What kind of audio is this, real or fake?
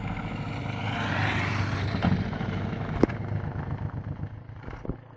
real